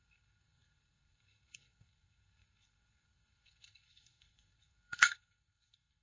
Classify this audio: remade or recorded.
remade